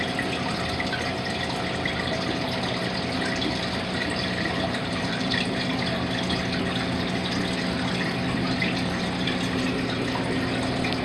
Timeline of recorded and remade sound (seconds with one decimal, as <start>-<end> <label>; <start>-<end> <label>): 0.0-3.4 recorded; 3.4-5.6 remade; 5.6-11.0 recorded